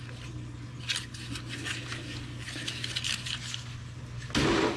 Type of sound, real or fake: real